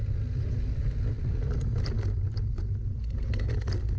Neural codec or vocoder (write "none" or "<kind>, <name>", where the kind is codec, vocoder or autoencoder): none